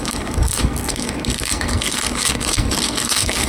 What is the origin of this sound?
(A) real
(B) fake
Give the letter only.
B